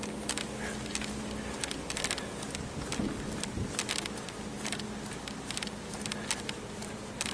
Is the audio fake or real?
real